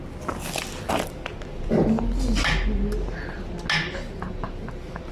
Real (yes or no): yes